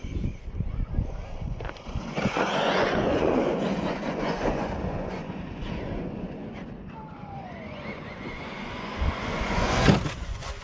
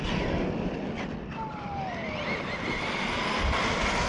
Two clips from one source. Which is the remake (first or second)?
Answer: first